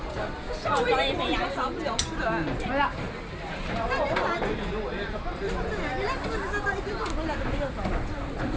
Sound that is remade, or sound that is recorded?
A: recorded